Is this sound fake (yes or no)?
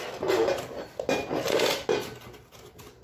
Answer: no